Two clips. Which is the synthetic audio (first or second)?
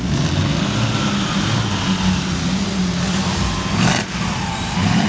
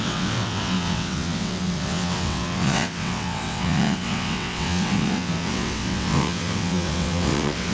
second